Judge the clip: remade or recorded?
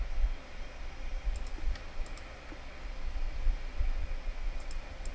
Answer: recorded